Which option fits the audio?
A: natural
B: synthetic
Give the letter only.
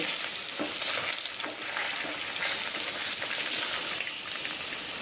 A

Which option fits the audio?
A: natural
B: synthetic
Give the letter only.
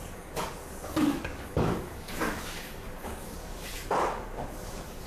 B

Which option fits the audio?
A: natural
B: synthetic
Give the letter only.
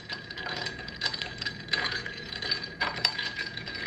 B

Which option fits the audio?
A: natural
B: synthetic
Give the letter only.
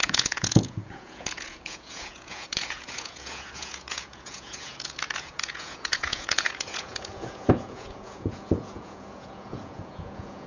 B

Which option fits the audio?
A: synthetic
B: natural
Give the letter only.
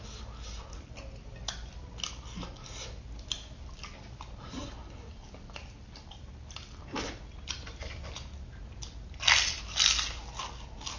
B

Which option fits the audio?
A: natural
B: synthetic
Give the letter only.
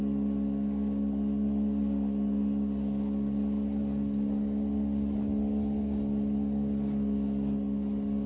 A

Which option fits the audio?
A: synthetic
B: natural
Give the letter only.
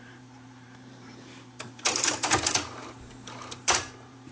A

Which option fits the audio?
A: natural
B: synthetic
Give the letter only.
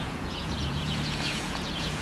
B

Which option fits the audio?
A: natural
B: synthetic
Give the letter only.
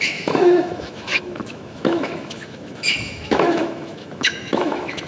B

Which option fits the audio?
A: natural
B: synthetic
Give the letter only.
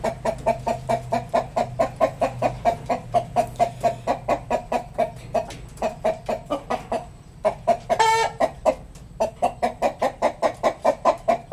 A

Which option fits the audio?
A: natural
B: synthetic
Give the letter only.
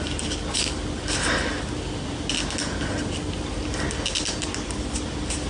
A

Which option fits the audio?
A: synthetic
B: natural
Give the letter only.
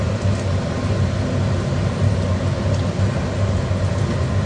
B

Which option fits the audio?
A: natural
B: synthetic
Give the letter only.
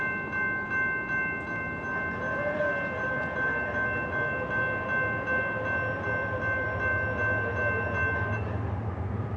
A